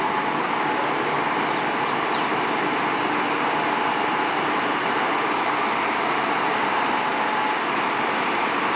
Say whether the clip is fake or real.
real